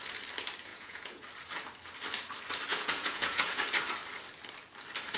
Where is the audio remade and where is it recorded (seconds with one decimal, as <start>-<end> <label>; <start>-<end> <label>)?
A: 0.0-0.7 recorded; 0.7-1.2 remade; 1.2-2.7 recorded; 2.7-3.6 remade; 3.6-5.2 recorded